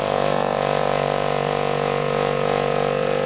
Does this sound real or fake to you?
fake